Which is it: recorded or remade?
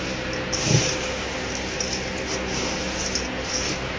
recorded